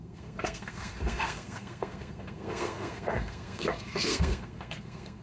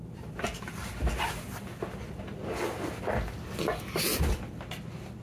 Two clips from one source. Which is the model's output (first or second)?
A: first